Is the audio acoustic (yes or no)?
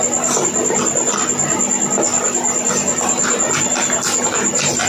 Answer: yes